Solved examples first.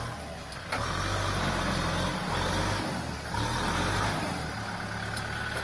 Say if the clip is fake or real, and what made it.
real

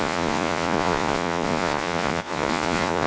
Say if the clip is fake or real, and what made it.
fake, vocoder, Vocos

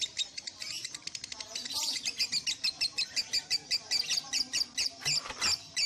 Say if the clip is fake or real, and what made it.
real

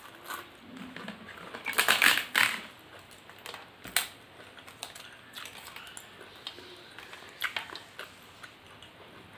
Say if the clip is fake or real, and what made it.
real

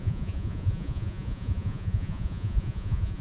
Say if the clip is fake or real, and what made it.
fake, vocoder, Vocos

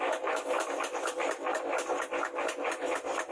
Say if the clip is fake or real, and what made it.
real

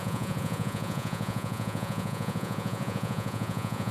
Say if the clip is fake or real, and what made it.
fake, vocoder, Vocos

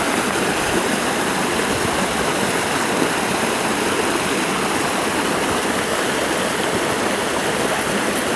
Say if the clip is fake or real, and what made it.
real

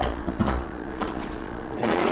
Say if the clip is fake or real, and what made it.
fake, vocoder, Vocos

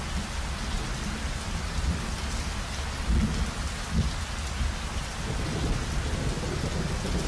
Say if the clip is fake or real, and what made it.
real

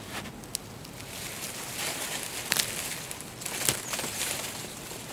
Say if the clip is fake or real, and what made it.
real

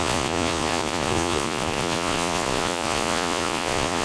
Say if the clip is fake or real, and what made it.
fake, vocoder, Vocos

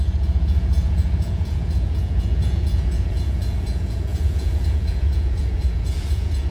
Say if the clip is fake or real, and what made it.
fake, vocoder, Vocos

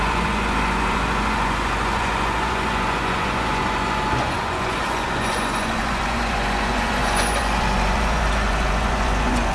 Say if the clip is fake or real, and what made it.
fake, vocoder, Vocos